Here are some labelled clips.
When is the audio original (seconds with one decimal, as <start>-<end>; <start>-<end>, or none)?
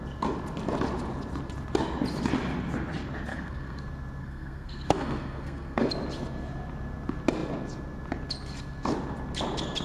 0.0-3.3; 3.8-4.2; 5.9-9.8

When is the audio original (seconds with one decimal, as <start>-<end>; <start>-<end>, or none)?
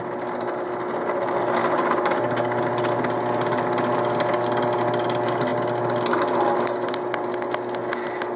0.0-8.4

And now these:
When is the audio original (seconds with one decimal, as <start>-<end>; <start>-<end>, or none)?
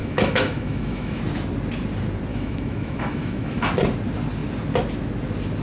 1.2-2.3; 3.7-5.6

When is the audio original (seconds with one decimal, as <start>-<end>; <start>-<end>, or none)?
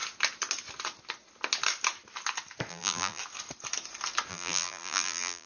0.0-2.7; 3.2-4.3